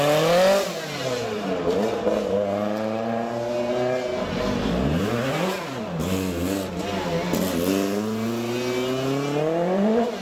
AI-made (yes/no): no